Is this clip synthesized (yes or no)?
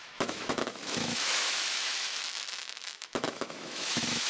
yes